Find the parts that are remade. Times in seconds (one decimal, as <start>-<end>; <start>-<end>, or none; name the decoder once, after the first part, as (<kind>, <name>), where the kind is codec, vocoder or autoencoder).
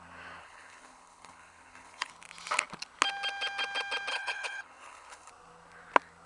0.4-2.1 (codec, HILCodec); 4.1-5.3